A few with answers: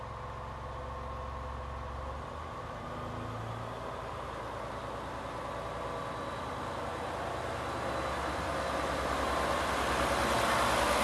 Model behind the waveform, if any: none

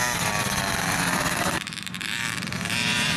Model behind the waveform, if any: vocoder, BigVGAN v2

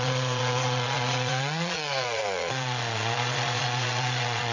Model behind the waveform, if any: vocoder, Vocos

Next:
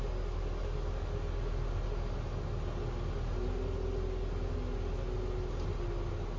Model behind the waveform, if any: none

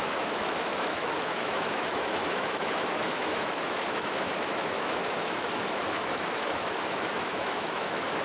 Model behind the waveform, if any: autoencoder, DAC-VAE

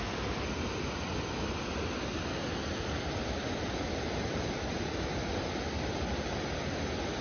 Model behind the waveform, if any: none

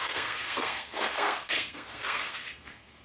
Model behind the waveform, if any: codec, SNAC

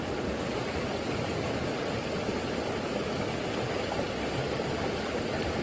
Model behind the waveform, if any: none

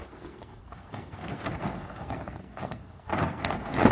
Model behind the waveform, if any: codec, SNAC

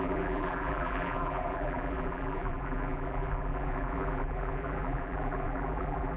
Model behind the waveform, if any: vocoder, BigVGAN v2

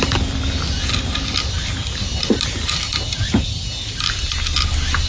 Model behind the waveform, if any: none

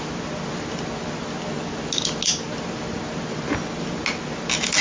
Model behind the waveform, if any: none